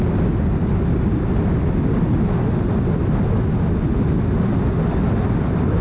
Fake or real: real